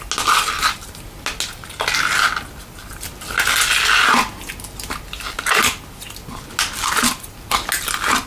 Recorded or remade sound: recorded